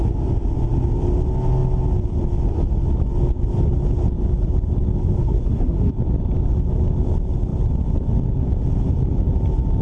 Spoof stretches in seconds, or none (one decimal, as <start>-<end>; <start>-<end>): 5.2-5.9